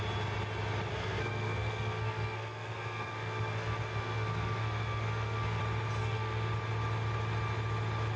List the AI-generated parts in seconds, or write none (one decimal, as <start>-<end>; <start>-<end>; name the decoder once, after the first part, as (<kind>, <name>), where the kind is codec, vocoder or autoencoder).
0.9-5.6 (codec, SNAC); 6.0-6.5